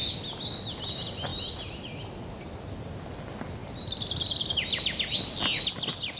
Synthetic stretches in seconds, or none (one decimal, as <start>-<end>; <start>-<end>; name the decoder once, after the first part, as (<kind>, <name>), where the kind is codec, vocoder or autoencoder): 1.3-2.1 (vocoder, BigVGAN v2); 3.6-5.2